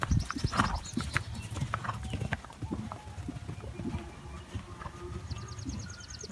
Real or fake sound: real